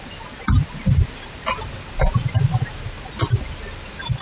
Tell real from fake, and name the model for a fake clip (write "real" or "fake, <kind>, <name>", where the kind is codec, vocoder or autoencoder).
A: real